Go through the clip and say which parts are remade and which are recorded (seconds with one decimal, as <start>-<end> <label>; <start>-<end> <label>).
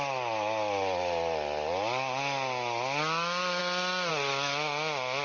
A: 0.0-5.2 recorded